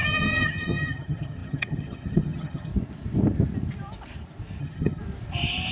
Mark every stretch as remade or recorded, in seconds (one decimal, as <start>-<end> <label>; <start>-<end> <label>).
0.0-2.7 remade; 2.7-4.6 recorded; 4.6-5.0 remade; 5.0-5.7 recorded